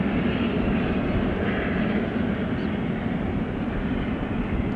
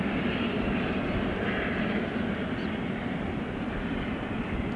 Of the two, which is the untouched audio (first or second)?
first